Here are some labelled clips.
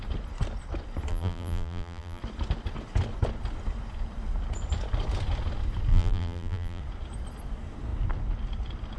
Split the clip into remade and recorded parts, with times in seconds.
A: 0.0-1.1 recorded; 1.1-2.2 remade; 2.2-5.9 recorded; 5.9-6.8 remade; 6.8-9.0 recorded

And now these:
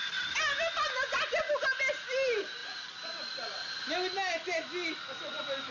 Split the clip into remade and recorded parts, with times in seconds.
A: 0.0-5.7 recorded

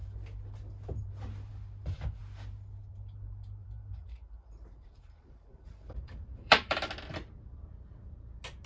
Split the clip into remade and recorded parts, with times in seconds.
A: 0.0-3.6 recorded; 3.6-6.9 remade; 6.9-8.7 recorded

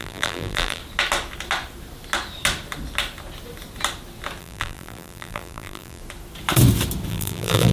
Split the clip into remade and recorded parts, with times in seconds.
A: 0.0-0.8 remade; 0.8-4.4 recorded; 4.4-6.0 remade; 6.0-7.1 recorded; 7.1-7.7 remade

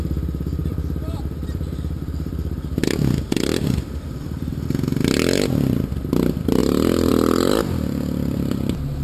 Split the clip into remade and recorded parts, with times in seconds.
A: 0.0-0.6 recorded; 0.6-4.5 remade; 4.5-6.6 recorded; 6.6-7.1 remade; 7.1-9.0 recorded

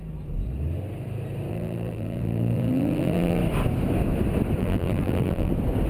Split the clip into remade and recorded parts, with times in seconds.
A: 0.0-1.5 recorded; 1.5-3.4 remade; 3.4-4.6 recorded; 4.6-5.5 remade; 5.5-5.9 recorded